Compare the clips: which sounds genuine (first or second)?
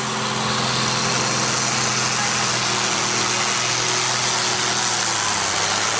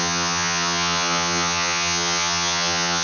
first